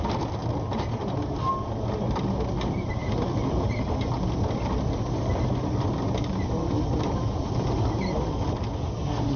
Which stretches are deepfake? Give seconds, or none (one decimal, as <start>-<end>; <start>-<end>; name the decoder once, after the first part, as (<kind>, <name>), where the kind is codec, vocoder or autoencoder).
none